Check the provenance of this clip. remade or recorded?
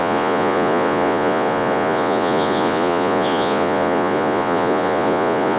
remade